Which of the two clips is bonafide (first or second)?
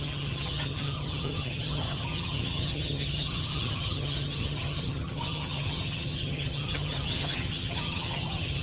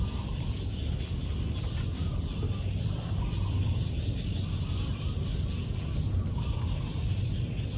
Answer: second